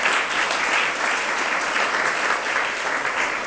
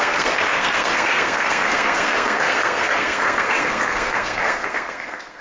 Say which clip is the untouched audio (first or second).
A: first